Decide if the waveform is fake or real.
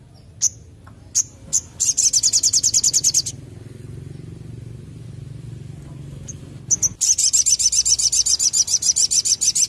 real